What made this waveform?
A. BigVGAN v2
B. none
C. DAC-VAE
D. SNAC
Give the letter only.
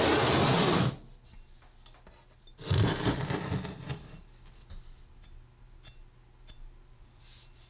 B